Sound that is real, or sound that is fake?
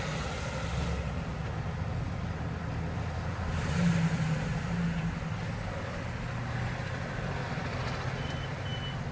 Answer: real